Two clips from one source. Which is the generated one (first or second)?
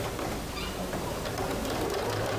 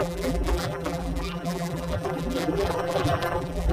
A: second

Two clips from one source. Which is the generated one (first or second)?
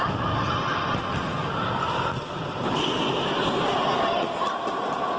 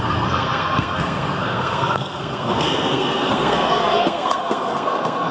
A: second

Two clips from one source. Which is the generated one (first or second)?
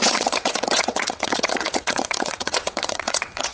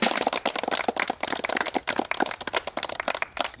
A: first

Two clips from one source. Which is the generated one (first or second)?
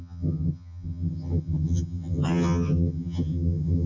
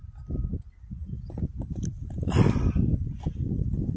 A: first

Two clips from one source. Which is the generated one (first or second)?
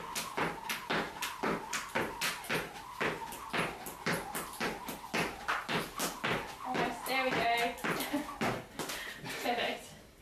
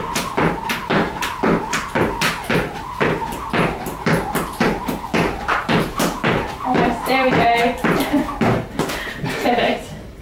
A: second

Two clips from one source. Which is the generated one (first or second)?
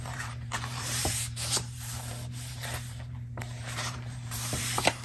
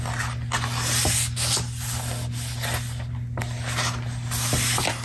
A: first